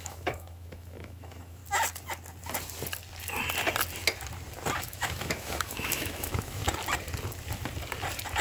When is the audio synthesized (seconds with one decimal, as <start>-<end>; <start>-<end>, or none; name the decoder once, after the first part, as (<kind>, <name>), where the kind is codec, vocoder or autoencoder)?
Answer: 0.0-1.6 (autoencoder, DAC-VAE); 4.8-6.6